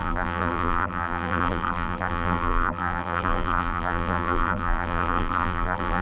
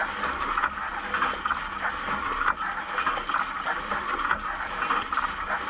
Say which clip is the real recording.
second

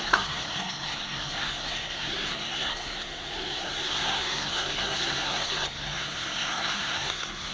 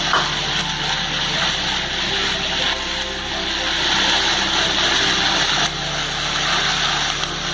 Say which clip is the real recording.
second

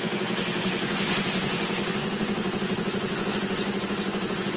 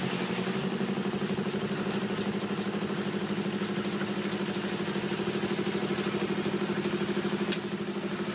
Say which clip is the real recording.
second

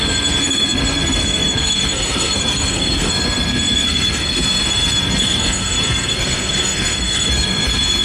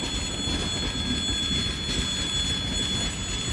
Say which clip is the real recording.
second